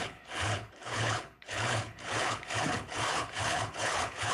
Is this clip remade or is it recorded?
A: remade